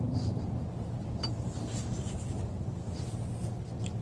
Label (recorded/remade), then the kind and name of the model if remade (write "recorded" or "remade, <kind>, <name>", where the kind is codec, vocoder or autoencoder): recorded